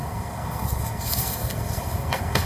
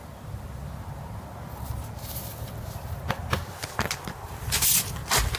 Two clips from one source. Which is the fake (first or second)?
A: first